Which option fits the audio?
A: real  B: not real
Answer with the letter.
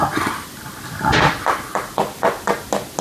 A